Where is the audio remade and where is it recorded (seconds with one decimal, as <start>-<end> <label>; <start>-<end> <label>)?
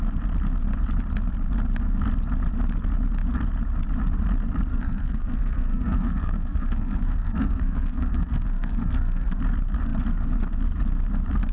0.0-4.7 recorded; 4.7-9.4 remade; 9.4-11.5 recorded